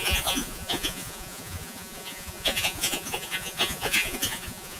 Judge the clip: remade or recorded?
remade